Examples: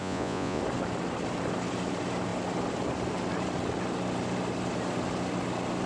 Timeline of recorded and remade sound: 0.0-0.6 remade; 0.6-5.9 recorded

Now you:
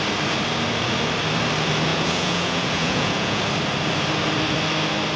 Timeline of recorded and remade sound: 0.0-1.9 recorded; 1.9-3.4 remade; 3.4-5.2 recorded

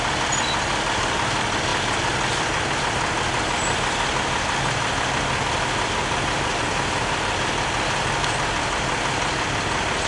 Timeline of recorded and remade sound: 0.0-10.1 recorded

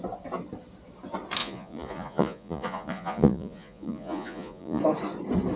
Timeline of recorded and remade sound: 0.0-1.4 recorded; 1.4-4.8 remade; 4.8-5.6 recorded

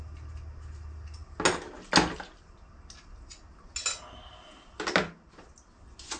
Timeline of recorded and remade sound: 0.0-6.2 recorded

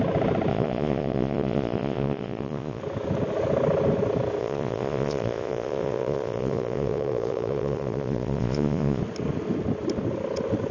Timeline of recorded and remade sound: 0.0-0.5 recorded; 0.5-2.8 remade; 2.8-4.4 recorded; 4.4-9.0 remade; 9.0-10.7 recorded

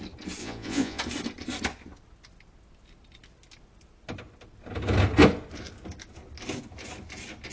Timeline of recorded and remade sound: 0.0-0.4 recorded; 0.4-1.0 remade; 1.0-7.5 recorded

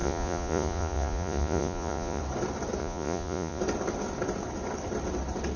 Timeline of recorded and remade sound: 0.0-2.2 remade; 2.2-2.8 recorded; 2.8-3.6 remade; 3.6-5.6 recorded